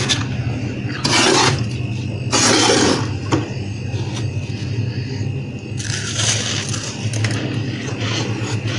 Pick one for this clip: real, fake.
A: real